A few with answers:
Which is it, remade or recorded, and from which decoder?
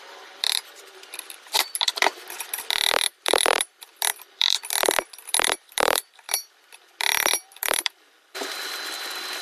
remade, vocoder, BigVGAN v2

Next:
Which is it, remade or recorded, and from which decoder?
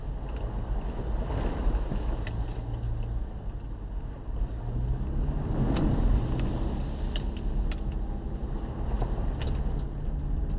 recorded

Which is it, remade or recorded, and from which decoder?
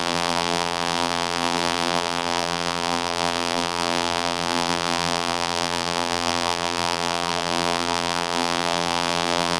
remade, vocoder, BigVGAN v2